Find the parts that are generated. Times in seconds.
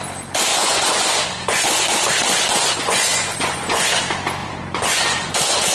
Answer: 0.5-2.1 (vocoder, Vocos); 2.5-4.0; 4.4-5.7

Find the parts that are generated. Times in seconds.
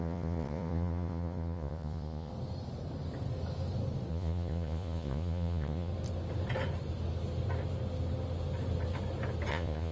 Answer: 0.0-2.3 (vocoder, Vocos); 4.1-5.9; 9.5-9.9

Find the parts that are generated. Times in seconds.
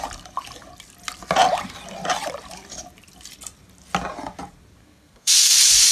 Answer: 4.8-5.5 (codec, SNAC)